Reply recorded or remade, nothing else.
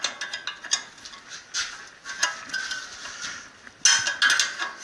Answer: recorded